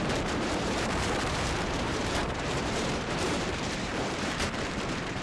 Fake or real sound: fake